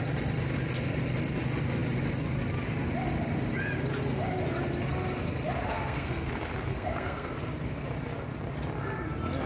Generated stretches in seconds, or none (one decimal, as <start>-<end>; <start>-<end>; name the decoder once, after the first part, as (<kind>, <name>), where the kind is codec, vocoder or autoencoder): 5.7-6.3 (codec, SNAC); 6.7-7.3